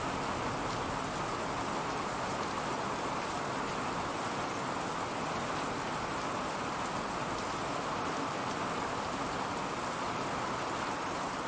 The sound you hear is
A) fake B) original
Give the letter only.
B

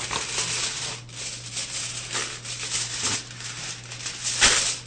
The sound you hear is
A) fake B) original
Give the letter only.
B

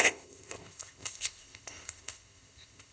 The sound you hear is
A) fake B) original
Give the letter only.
A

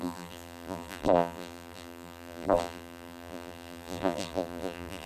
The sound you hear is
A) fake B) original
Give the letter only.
A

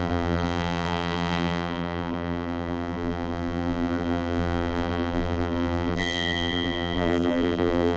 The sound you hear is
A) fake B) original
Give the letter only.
A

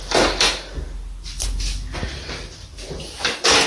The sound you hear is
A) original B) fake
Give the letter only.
A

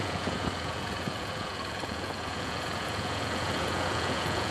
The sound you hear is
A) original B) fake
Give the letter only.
B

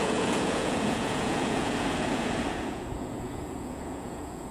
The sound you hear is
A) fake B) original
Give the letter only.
A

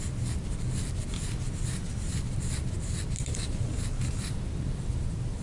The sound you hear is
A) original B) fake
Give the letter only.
A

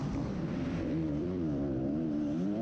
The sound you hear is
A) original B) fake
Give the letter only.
B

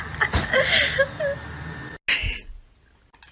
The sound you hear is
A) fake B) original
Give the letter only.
B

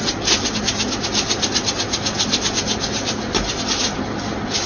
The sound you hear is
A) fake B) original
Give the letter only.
B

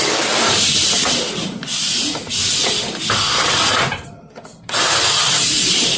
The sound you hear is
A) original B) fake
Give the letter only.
A